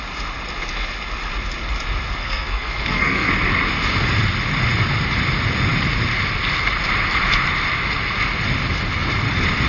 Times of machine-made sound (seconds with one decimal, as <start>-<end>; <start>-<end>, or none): 2.2-3.3